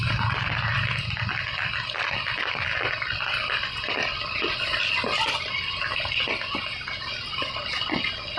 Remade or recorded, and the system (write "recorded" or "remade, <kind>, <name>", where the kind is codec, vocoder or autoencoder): recorded